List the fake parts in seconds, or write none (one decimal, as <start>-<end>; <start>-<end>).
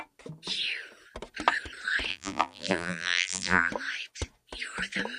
2.1-3.7